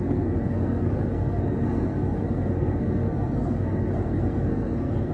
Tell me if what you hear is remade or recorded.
remade